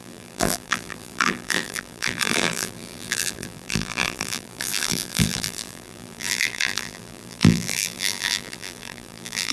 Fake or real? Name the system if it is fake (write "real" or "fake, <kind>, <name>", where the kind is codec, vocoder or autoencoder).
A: fake, vocoder, BigVGAN v2